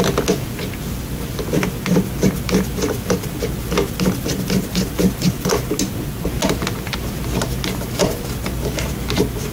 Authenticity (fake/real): real